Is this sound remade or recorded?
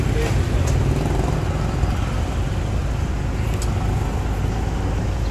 recorded